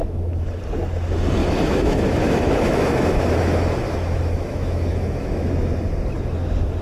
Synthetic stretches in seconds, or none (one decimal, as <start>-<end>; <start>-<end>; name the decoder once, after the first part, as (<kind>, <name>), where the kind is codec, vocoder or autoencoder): 0.0-0.6 (autoencoder, DAC-VAE); 1.4-5.5